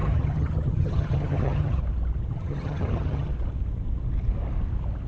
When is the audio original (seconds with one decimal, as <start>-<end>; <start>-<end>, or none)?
1.8-2.3; 3.3-5.1